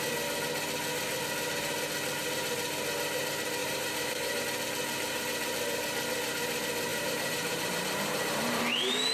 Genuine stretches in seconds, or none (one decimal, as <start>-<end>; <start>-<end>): 0.0-3.6; 4.4-6.9; 8.6-9.1